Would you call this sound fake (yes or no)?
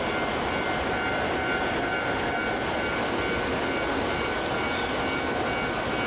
no